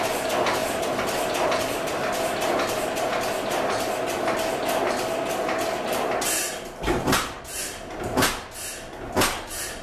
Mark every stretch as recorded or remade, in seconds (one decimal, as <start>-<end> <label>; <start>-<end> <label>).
0.0-9.8 recorded